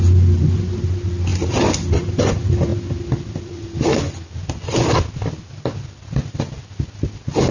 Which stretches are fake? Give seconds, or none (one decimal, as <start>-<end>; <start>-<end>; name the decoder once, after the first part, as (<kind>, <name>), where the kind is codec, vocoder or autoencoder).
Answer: none